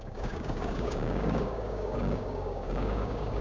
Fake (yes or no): yes